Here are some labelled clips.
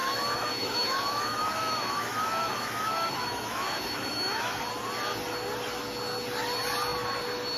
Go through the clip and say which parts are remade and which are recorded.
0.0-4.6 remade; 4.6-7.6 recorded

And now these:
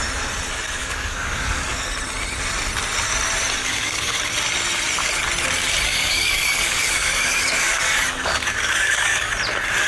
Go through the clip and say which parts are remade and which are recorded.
0.0-0.8 recorded; 0.8-1.8 remade; 1.8-3.6 recorded; 3.6-4.2 remade; 4.2-5.9 recorded; 5.9-9.3 remade; 9.3-9.9 recorded

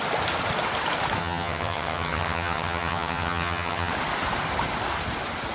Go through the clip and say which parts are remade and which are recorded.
0.0-1.2 recorded; 1.2-3.9 remade; 3.9-5.5 recorded

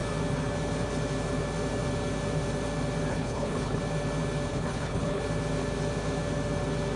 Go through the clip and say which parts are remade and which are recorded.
0.0-3.1 recorded; 3.1-3.8 remade; 3.8-4.5 recorded; 4.5-5.2 remade; 5.2-7.0 recorded

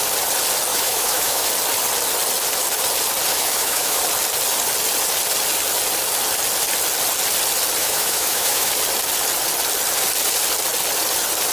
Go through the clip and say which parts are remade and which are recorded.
0.0-0.7 recorded; 0.7-1.5 remade; 1.5-3.3 recorded; 3.3-4.0 remade; 4.0-7.8 recorded; 7.8-8.7 remade; 8.7-11.5 recorded

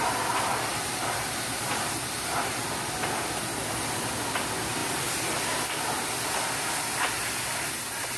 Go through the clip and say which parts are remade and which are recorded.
0.0-0.7 recorded; 0.7-2.9 remade; 2.9-4.8 recorded; 4.8-5.3 remade; 5.3-8.2 recorded